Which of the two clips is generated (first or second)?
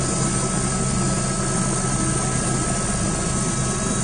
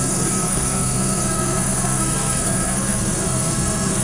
second